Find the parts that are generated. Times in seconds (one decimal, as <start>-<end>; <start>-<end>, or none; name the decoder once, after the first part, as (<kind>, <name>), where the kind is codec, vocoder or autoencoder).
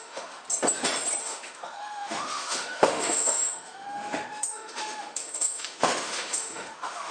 0.0-0.4 (autoencoder, DAC-VAE); 1.2-7.1